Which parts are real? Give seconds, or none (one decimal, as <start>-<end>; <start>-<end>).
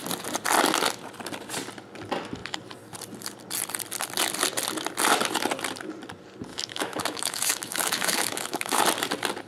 0.0-6.5; 8.8-9.5